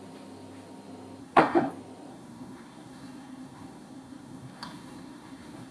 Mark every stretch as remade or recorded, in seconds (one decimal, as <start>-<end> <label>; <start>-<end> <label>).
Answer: 0.0-1.2 recorded; 1.2-1.7 remade; 1.7-2.1 recorded; 2.1-5.7 remade